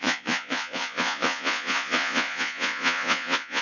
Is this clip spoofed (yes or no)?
yes